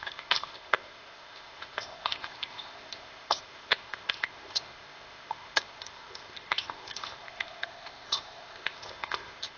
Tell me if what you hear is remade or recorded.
remade